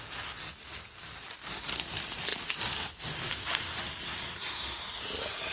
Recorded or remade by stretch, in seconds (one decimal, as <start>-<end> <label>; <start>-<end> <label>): 0.0-5.5 recorded